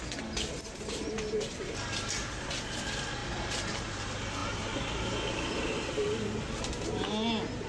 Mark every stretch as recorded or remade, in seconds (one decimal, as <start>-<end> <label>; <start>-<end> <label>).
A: 0.0-3.2 recorded; 3.2-3.9 remade; 3.9-7.7 recorded